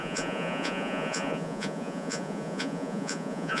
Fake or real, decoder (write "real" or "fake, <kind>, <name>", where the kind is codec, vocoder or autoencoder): fake, vocoder, Vocos